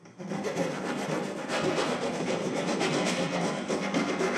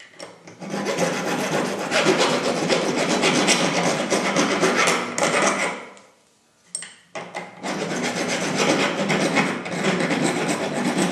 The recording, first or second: second